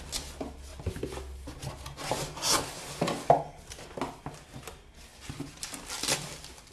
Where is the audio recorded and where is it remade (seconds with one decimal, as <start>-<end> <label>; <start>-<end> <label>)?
0.0-6.7 recorded